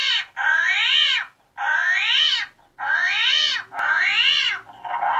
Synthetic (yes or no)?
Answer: no